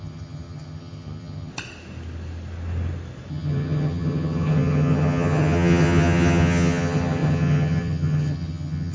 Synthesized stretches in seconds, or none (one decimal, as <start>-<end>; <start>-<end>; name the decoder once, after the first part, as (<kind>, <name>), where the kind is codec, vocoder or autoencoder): 0.0-1.5 (vocoder, HiFi-GAN); 3.3-8.9